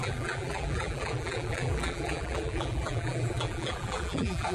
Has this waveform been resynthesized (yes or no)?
yes